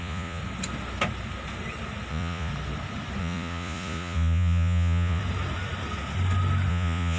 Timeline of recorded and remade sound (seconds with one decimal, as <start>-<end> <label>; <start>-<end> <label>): 0.0-0.4 remade; 0.4-2.1 recorded; 2.1-2.5 remade; 2.5-3.2 recorded; 3.2-5.2 remade; 5.2-6.7 recorded; 6.7-7.2 remade